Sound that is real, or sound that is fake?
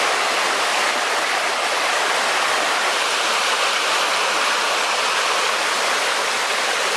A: fake